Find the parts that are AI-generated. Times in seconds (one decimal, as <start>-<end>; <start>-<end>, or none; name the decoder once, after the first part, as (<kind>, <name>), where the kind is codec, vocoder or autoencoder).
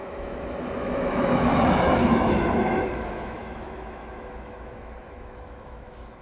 0.0-6.2 (autoencoder, DAC-VAE)